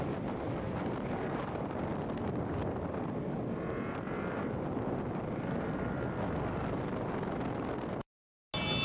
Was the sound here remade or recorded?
recorded